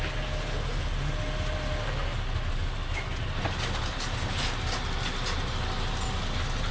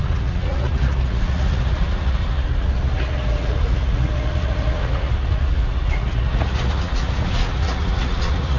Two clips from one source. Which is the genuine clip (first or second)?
first